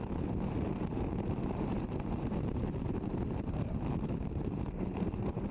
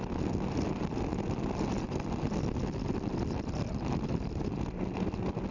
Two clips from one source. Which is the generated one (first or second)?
first